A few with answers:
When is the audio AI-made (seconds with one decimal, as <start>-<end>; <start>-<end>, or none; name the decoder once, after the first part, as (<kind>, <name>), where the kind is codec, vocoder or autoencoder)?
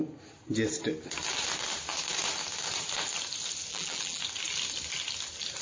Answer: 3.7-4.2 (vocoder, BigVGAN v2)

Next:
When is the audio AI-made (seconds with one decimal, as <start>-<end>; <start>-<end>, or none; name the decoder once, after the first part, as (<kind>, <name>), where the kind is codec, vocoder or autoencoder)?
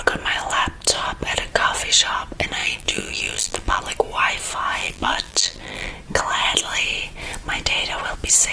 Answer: 2.6-3.8 (vocoder, BigVGAN v2); 4.8-5.9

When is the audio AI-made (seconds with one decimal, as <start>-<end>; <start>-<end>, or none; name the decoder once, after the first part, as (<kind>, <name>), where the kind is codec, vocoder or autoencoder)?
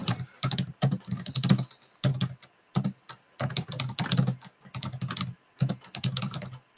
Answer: 0.0-1.3 (vocoder, BigVGAN v2)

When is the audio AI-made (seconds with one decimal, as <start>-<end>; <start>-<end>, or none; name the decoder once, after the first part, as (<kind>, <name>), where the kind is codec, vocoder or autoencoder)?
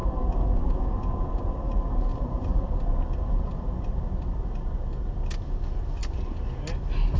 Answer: 2.1-2.7 (vocoder, BigVGAN v2)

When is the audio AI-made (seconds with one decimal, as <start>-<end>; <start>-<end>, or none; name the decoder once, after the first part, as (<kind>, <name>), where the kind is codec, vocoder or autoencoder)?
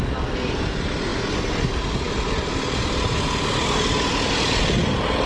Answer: none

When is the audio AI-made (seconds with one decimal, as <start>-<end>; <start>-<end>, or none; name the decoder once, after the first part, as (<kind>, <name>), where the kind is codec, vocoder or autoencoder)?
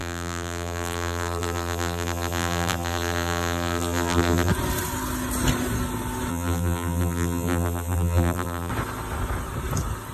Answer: 0.0-4.5 (vocoder, BigVGAN v2); 6.3-8.7